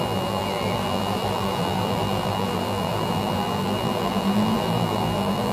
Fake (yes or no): yes